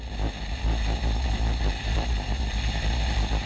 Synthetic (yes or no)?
no